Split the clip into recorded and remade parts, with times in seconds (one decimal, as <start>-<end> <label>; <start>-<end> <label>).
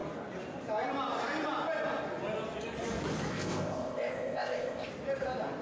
0.0-3.3 recorded; 3.3-4.9 remade; 4.9-5.6 recorded